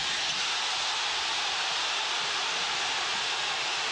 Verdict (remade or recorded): recorded